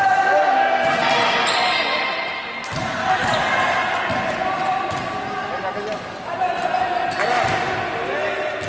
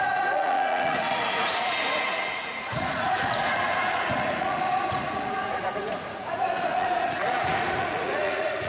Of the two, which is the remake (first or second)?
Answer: second